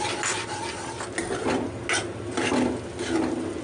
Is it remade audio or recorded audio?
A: recorded